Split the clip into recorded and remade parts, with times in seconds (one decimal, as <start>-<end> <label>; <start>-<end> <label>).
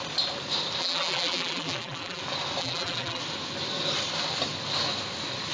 0.0-0.8 recorded; 0.8-2.2 remade; 2.2-2.6 recorded; 2.6-3.2 remade; 3.2-5.5 recorded